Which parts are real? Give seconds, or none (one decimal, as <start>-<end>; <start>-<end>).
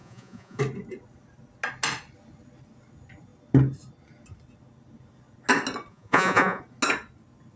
0.6-5.9; 6.6-7.6